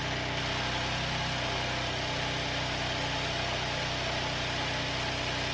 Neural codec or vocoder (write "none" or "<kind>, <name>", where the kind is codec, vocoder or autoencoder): none